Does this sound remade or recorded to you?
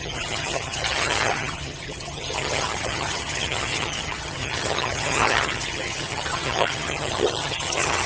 remade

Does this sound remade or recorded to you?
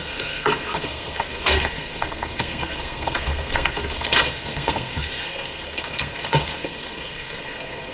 remade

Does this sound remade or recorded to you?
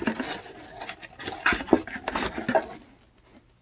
recorded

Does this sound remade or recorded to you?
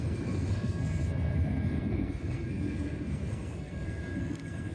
remade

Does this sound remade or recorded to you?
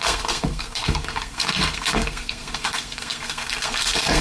remade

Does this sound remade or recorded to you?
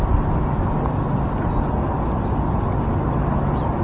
recorded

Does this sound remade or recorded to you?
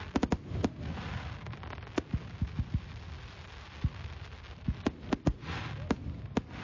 recorded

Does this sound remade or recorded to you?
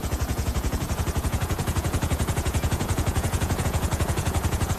remade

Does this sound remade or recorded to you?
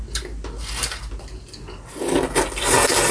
recorded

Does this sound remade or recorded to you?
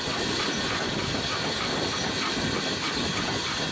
recorded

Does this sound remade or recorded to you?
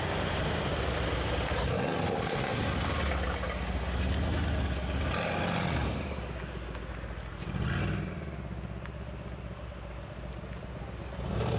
recorded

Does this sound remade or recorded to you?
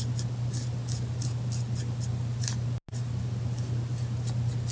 recorded